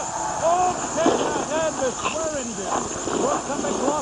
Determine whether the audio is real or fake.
real